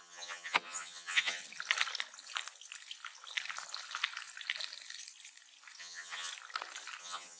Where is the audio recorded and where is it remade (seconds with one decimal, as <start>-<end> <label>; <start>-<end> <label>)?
0.0-1.4 remade; 1.4-5.8 recorded; 5.8-6.3 remade; 6.3-7.0 recorded; 7.0-7.4 remade